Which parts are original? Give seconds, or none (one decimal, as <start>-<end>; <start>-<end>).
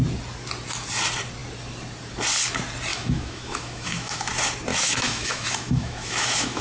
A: 0.0-2.9; 4.3-4.7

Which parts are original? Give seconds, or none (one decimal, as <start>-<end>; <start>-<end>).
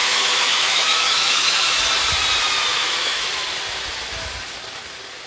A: 1.8-2.7; 3.3-5.3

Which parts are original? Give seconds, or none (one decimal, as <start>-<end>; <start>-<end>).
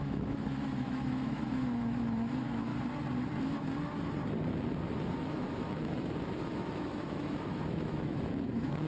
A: 2.7-5.1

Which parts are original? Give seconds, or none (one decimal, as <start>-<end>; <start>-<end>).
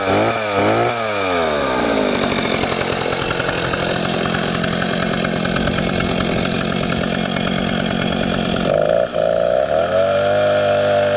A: 0.0-9.1; 9.7-11.2